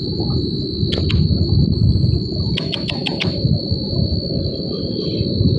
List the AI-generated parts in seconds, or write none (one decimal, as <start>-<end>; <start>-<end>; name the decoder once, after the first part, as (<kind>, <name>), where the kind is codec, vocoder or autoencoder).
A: none